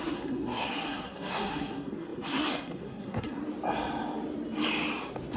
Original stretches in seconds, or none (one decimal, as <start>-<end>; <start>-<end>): 3.4-5.4